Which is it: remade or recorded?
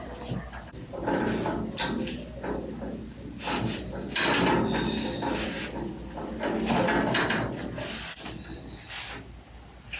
recorded